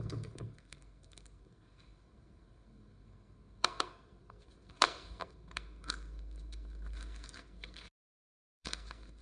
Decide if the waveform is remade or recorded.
remade